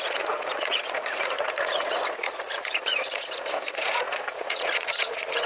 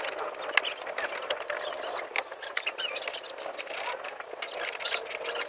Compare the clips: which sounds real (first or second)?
second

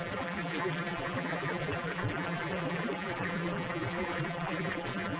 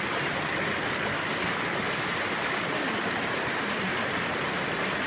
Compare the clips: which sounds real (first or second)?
second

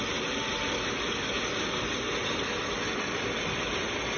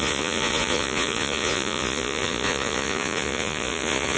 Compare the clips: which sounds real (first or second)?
first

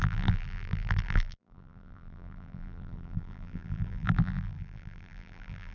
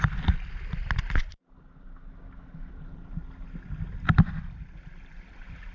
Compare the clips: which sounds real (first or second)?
second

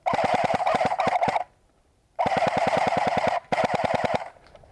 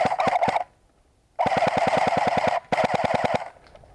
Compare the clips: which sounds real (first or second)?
second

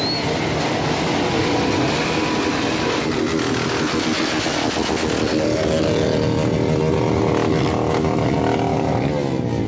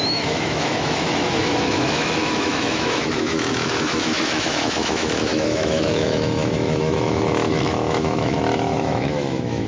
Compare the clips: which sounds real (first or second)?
first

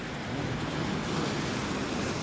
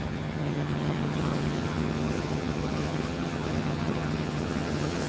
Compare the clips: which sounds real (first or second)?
first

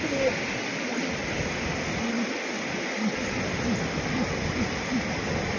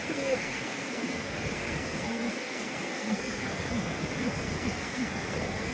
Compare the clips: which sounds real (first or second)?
first